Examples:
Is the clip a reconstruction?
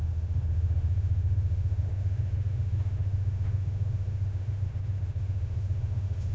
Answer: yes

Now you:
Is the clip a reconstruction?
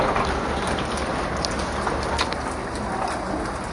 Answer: no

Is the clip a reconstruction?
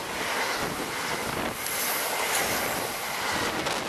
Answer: no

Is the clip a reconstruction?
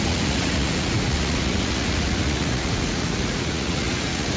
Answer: yes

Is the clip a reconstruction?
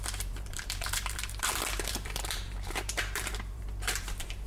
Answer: yes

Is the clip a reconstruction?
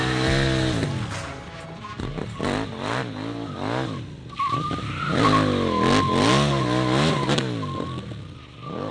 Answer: no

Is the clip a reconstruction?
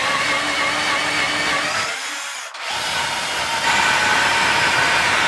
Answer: no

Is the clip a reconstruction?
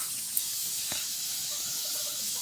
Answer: yes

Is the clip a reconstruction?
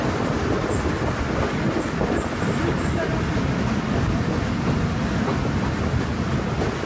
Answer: no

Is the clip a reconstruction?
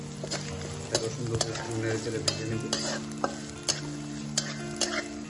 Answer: no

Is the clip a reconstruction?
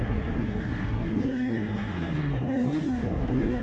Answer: yes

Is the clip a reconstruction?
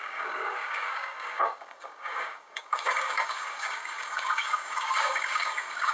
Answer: yes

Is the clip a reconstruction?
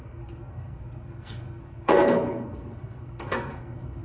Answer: yes